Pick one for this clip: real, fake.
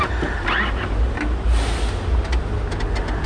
real